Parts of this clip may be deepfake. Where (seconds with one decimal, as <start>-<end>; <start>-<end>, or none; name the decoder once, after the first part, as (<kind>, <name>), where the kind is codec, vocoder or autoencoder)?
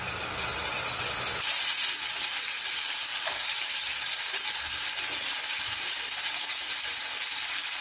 3.1-4.2 (vocoder, BigVGAN v2)